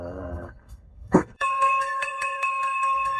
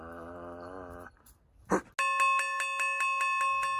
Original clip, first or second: second